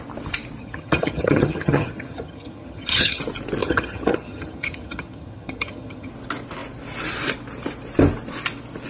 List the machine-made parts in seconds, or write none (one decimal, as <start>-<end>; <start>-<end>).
0.6-3.2; 3.6-6.1